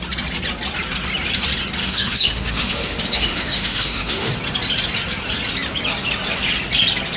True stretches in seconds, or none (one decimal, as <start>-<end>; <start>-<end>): 0.0-1.8; 4.3-7.2